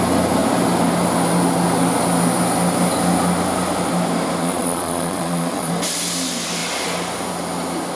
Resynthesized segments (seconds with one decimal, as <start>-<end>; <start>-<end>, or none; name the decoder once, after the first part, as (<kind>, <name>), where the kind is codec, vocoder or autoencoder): 4.4-5.7 (vocoder, Vocos)